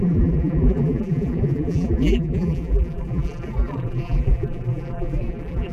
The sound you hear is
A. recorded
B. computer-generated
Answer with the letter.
B